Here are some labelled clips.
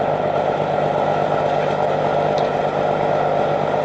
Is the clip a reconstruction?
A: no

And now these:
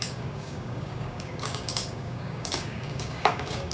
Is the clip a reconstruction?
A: yes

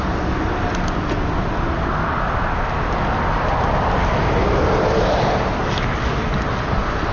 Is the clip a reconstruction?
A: no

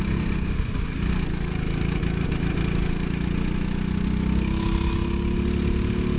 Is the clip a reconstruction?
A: no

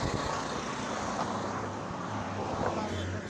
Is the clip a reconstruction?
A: no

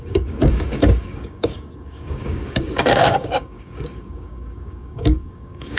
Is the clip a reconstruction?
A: yes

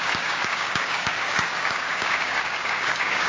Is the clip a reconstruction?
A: yes